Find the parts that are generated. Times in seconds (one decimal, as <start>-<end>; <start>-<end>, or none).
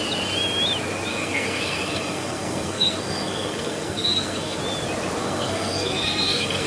1.1-4.6; 5.2-6.7